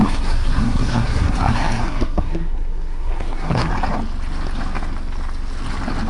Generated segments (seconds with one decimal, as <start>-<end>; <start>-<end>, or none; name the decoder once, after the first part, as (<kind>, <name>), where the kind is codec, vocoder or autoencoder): 0.0-3.7 (codec, SNAC)